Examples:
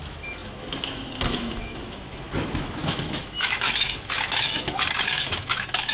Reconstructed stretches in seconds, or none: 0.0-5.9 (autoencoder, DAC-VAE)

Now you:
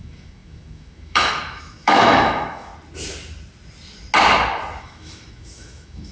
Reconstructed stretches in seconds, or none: 0.0-2.7 (autoencoder, DAC-VAE); 4.8-6.1

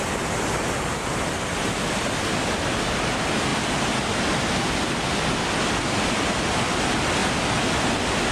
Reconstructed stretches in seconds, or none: none

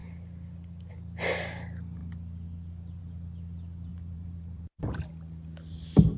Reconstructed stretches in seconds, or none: 3.9-4.8 (vocoder, BigVGAN v2)